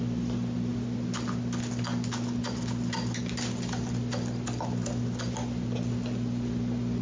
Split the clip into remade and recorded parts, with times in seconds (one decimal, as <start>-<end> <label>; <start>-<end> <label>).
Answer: 0.0-7.0 recorded